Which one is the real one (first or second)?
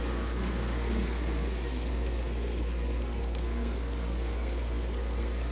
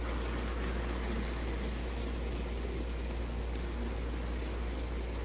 second